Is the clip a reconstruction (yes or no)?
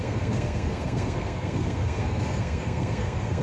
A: yes